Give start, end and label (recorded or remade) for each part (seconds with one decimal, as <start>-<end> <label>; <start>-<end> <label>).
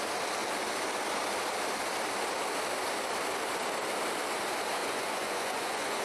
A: 0.0-4.8 recorded; 4.8-6.0 remade